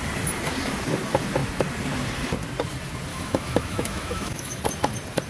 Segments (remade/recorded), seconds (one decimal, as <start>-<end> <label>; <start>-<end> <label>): 0.0-3.1 recorded; 3.1-4.6 remade; 4.6-5.3 recorded